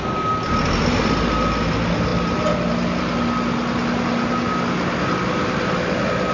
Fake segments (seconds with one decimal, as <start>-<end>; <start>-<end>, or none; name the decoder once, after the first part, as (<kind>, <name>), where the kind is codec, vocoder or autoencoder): none